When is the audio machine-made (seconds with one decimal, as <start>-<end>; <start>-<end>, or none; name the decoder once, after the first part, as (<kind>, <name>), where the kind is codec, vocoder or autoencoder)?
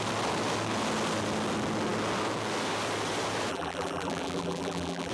3.5-5.1 (vocoder, BigVGAN v2)